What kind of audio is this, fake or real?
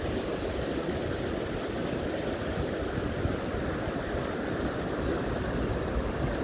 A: real